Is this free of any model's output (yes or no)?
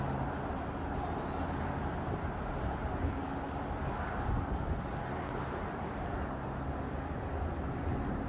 yes